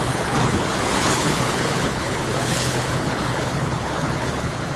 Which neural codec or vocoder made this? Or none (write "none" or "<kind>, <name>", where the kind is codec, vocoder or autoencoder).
codec, HILCodec